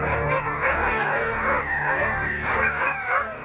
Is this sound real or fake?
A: fake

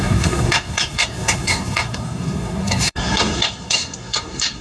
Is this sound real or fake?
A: fake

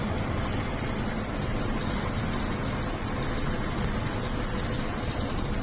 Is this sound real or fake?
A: real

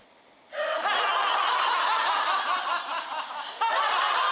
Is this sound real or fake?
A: real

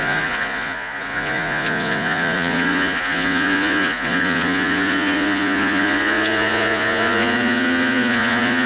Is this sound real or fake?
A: fake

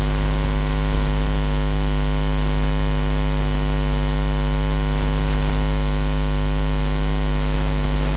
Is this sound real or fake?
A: real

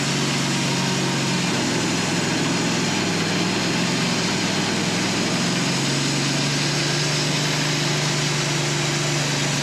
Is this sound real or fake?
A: real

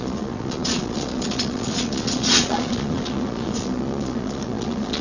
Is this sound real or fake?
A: fake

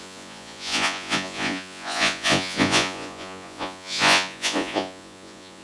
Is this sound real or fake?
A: fake